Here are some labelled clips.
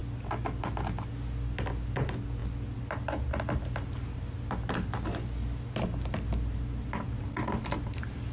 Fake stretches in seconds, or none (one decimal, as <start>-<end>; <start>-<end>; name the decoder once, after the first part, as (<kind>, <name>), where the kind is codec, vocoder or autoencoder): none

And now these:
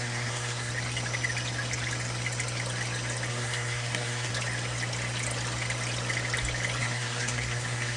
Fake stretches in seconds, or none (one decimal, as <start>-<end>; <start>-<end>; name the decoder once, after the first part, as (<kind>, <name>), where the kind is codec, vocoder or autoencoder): 0.0-0.7 (codec, SNAC); 3.3-4.3; 6.8-8.0

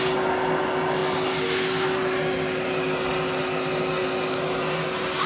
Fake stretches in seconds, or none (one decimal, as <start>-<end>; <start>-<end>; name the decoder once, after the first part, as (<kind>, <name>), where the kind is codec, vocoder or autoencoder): none

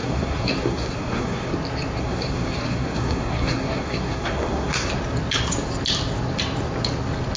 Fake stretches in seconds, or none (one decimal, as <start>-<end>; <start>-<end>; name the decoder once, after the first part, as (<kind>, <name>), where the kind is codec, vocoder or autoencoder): 0.0-1.5 (codec, SNAC); 2.0-4.9